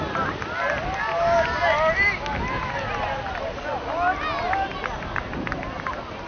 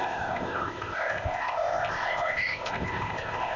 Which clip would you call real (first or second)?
first